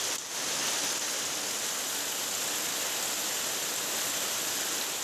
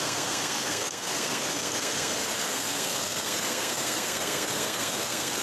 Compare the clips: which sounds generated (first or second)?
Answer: second